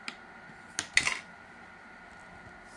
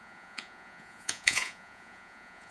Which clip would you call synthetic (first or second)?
second